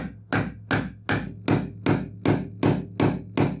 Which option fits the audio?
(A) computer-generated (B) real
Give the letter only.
B